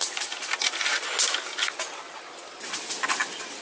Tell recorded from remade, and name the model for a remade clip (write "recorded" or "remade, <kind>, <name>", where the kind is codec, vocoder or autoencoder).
recorded